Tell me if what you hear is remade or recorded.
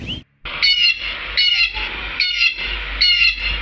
recorded